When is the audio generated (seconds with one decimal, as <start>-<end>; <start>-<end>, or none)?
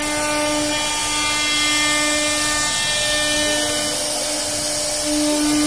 none